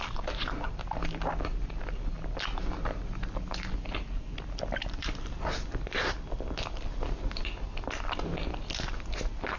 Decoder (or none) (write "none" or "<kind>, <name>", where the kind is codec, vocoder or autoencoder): none